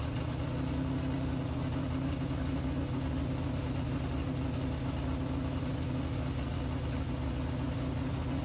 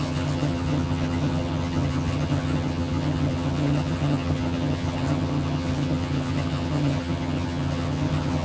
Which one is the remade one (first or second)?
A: second